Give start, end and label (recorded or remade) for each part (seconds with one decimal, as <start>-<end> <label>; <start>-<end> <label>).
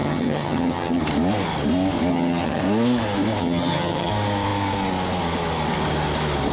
0.0-1.0 remade; 1.0-2.1 recorded; 2.1-2.6 remade; 2.6-3.4 recorded; 3.4-4.1 remade; 4.1-6.5 recorded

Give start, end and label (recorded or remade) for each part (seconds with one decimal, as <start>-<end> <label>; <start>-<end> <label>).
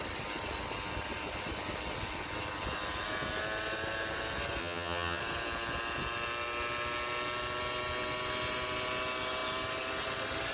0.0-4.6 recorded; 4.6-5.2 remade; 5.2-10.5 recorded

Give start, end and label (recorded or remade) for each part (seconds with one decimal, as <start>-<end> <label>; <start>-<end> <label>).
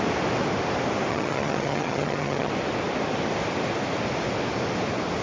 0.0-1.1 recorded; 1.1-2.5 remade; 2.5-5.2 recorded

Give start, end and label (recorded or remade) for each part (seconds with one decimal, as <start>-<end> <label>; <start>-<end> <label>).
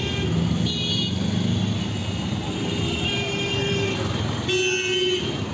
0.0-5.5 recorded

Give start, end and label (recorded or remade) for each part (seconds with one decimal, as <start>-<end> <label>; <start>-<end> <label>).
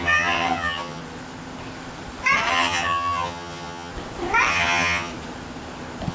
0.0-1.0 remade; 1.0-2.5 recorded; 2.5-3.9 remade; 3.9-4.5 recorded; 4.5-5.1 remade; 5.1-6.1 recorded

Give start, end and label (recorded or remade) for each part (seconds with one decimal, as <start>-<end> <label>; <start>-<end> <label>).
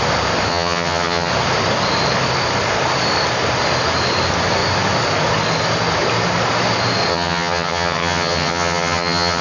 0.0-0.5 recorded; 0.5-1.3 remade; 1.3-7.1 recorded; 7.1-9.4 remade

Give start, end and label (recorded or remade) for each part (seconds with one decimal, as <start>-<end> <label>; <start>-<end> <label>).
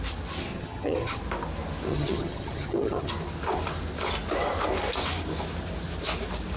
0.0-0.5 recorded; 0.5-1.2 remade; 1.2-1.9 recorded; 1.9-3.1 remade; 3.1-6.6 recorded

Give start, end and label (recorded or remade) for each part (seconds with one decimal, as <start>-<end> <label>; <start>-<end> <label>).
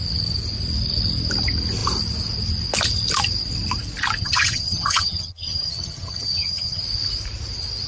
0.0-4.2 recorded; 4.2-6.8 remade; 6.8-7.9 recorded